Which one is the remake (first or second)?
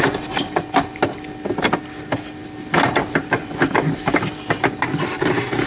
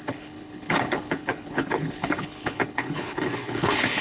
second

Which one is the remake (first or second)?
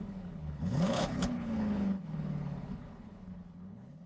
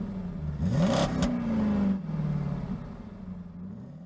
first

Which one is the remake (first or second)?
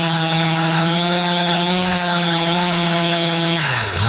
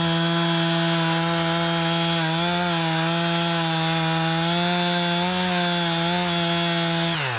first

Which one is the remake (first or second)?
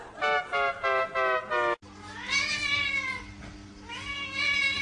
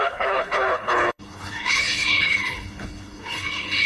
second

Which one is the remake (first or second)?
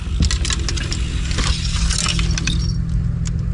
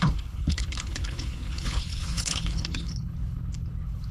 second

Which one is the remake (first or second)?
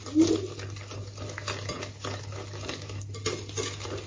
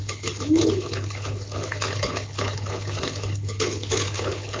second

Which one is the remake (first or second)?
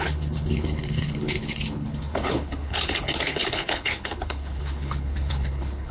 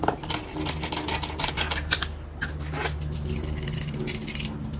first